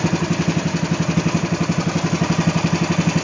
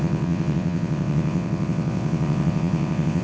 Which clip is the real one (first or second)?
first